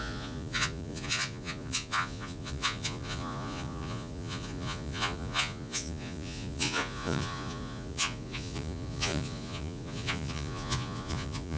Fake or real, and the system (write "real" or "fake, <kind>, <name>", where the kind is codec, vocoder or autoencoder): fake, vocoder, Vocos